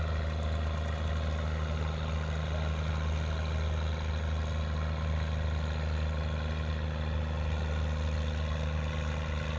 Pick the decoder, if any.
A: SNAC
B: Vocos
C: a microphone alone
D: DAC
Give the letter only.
C